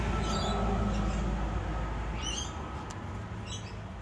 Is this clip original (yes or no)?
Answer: yes